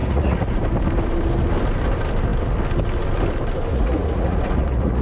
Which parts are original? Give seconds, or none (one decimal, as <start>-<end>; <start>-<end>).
0.6-3.7